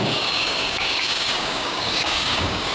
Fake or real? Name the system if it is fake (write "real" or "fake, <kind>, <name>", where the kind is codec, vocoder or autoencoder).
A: fake, codec, DAC